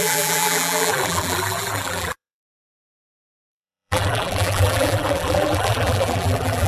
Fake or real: fake